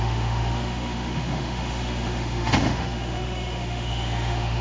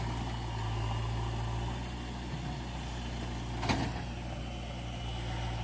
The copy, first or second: first